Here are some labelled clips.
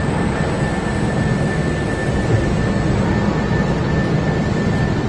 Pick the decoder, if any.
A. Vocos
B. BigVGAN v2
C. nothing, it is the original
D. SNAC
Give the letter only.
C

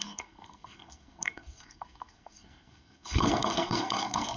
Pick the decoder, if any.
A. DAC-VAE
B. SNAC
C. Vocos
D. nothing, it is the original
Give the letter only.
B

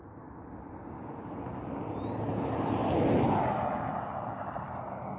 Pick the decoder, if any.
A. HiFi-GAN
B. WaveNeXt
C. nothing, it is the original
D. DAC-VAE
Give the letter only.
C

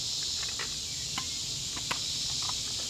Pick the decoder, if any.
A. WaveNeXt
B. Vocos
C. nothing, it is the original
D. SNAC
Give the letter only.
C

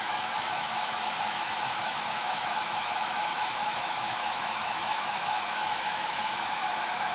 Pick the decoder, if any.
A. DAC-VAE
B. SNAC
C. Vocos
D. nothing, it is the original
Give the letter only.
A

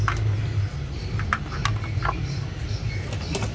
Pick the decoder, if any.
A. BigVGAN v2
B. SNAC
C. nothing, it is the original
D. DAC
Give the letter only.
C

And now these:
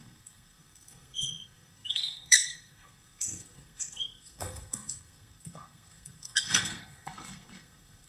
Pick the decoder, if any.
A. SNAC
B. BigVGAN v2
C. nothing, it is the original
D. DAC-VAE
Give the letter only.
A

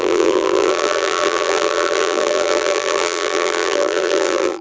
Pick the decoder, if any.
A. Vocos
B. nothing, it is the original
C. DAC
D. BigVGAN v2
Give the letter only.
D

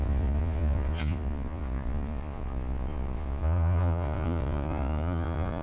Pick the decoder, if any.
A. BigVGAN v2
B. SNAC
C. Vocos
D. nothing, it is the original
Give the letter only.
C